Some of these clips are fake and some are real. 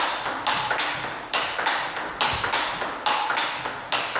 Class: fake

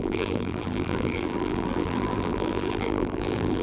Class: fake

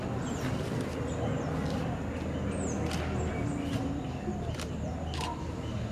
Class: real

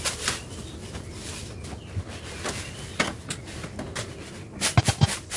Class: real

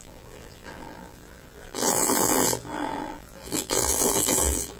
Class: fake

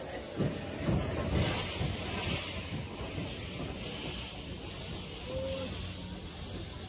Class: real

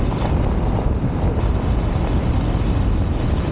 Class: real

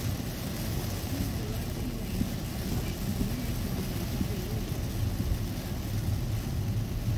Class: real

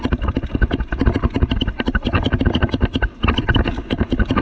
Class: real